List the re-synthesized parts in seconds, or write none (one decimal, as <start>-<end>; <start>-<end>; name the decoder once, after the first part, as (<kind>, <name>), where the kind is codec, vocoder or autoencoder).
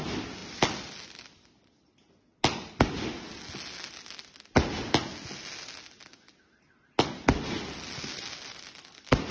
none